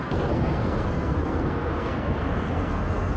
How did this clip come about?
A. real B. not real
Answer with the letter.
B